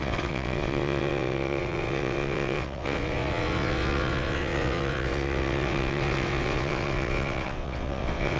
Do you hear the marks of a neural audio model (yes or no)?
yes